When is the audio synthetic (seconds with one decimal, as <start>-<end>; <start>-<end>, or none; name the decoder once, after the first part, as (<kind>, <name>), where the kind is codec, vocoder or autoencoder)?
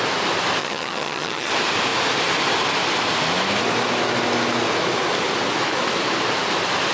0.6-1.5 (vocoder, HiFi-GAN)